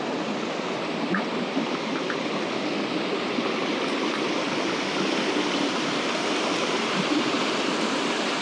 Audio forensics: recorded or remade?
recorded